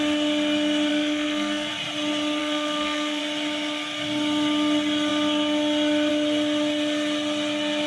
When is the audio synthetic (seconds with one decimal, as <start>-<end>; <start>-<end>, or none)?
0.9-1.7; 2.4-3.2